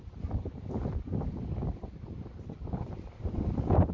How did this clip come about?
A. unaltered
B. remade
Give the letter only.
A